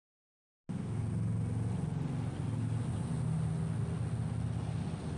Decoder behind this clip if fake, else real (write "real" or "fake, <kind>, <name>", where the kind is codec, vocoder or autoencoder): real